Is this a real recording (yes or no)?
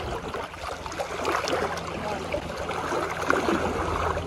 yes